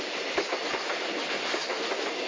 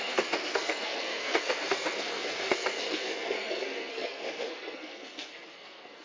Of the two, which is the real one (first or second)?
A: first